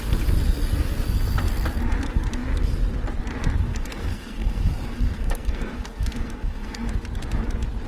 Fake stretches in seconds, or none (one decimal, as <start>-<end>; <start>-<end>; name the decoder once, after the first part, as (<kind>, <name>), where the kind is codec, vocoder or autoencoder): 3.7-6.9 (codec, SNAC)